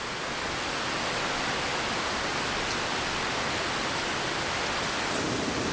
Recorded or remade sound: recorded